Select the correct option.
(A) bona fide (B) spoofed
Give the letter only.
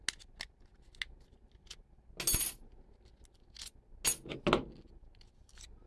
A